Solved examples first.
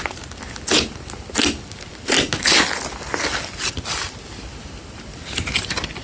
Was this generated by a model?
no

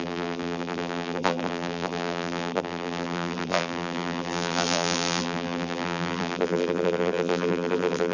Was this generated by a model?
yes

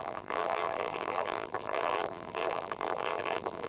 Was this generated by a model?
yes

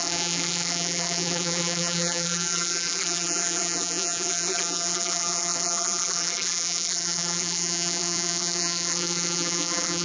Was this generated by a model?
yes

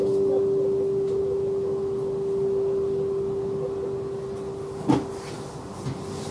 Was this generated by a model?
no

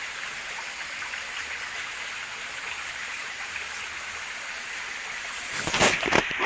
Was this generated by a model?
no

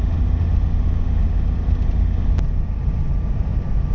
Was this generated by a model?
no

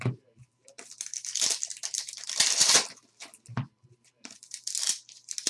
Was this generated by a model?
yes